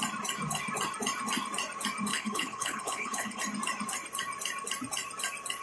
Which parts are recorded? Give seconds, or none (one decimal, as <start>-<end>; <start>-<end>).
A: 0.0-2.1; 3.4-5.6